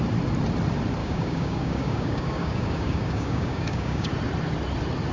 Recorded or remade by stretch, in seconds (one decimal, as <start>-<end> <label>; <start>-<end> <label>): 0.0-1.0 recorded; 1.0-4.1 remade; 4.1-5.1 recorded